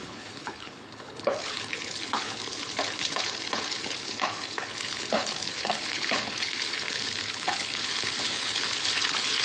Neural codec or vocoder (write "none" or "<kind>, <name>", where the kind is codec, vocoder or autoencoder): codec, HILCodec